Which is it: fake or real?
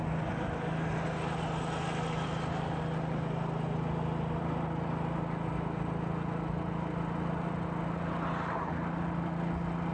real